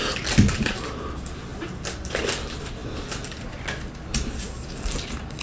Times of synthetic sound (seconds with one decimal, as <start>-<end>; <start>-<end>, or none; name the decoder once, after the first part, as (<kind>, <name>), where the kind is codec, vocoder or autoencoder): 1.5-2.4 (vocoder, BigVGAN v2); 2.8-4.3